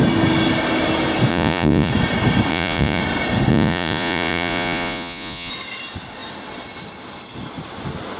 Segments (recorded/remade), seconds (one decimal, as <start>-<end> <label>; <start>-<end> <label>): 0.0-1.3 recorded; 1.3-1.9 remade; 1.9-2.5 recorded; 2.5-3.0 remade; 3.0-3.5 recorded; 3.5-5.5 remade; 5.5-8.2 recorded